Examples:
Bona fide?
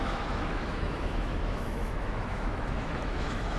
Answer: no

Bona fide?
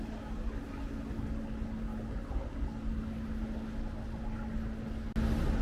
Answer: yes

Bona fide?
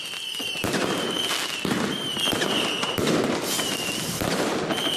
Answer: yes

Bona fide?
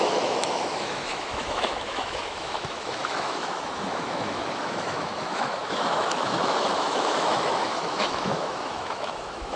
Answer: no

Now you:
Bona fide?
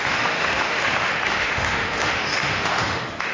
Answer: no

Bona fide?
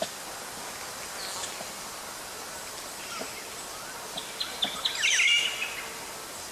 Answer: yes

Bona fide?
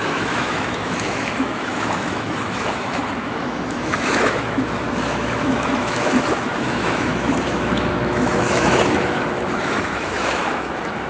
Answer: no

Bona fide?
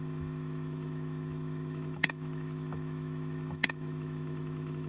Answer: no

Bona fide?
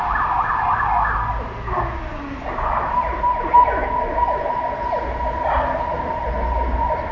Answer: yes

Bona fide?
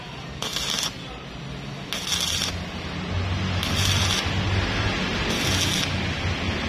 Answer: yes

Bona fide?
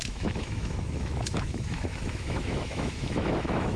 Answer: no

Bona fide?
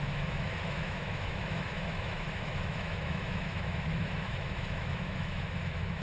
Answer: no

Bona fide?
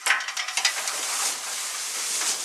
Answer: yes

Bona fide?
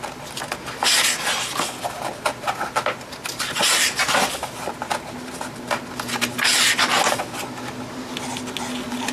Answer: yes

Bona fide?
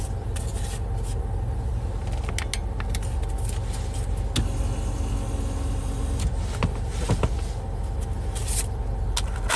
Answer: yes